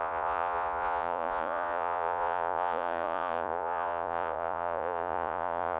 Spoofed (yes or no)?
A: yes